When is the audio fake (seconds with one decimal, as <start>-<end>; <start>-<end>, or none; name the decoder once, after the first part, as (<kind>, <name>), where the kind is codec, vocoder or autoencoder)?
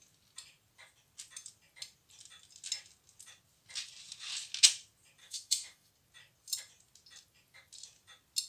5.2-5.9 (autoencoder, DAC-VAE)